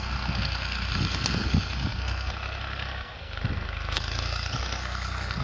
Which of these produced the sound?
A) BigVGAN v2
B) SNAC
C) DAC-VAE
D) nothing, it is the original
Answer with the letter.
B